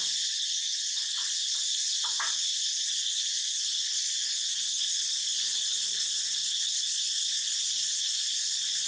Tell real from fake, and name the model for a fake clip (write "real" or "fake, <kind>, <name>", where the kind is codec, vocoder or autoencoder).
real